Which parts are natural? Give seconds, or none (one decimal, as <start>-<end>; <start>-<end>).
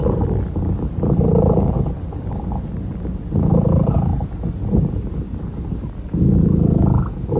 0.0-7.4